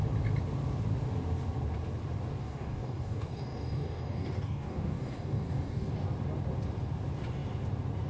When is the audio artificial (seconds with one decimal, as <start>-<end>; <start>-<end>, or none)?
2.4-5.9